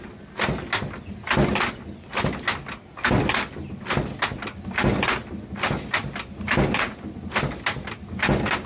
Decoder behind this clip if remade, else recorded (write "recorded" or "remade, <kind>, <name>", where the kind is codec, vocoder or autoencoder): recorded